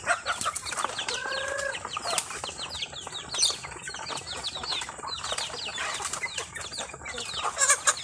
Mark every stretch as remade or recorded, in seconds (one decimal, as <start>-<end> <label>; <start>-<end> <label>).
0.0-8.0 recorded